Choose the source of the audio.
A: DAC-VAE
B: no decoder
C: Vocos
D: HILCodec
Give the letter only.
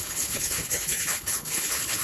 D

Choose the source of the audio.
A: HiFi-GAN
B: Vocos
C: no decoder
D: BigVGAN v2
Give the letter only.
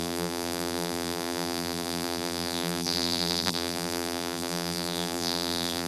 D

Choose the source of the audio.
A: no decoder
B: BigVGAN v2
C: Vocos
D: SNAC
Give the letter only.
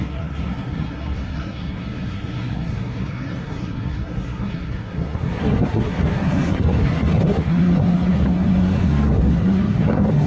D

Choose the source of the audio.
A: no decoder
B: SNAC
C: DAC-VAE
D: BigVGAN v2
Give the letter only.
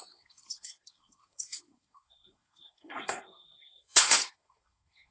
B